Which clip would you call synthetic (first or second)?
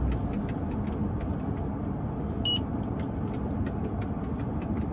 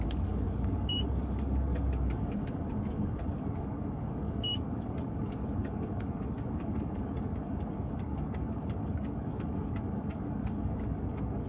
second